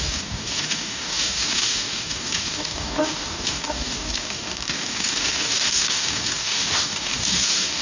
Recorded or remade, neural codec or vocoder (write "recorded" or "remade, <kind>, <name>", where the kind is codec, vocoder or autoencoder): remade, codec, DAC